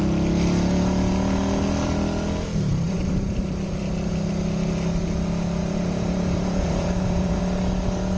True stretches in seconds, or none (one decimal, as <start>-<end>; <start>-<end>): 0.0-2.7; 4.1-5.6; 7.4-8.2